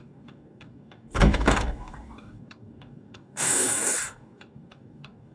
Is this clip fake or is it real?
fake